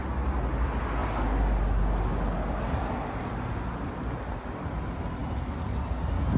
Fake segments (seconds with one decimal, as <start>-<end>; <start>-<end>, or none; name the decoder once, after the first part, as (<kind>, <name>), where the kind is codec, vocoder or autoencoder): none

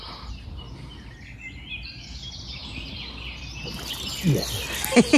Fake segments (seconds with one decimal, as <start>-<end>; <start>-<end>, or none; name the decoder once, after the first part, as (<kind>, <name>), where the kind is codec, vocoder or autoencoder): none

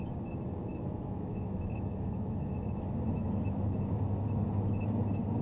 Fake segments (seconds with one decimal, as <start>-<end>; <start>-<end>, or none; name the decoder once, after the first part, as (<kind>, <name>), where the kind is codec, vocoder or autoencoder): 0.7-3.9 (autoencoder, DAC-VAE)

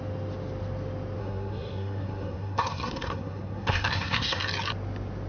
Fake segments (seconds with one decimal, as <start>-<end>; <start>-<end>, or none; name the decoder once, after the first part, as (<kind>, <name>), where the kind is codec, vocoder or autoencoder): 1.2-4.4 (codec, SNAC)

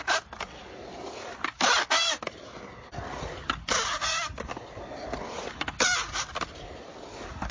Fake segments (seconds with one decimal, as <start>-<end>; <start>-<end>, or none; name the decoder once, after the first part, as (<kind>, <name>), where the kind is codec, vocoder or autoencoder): none